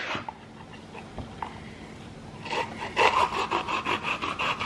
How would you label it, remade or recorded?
recorded